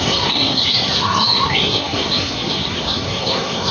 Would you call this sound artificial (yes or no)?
yes